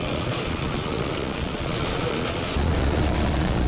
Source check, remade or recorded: remade